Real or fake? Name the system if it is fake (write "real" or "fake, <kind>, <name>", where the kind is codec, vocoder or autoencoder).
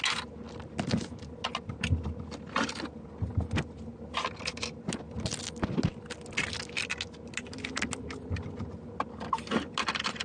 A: real